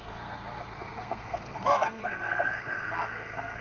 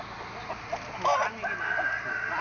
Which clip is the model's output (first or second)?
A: first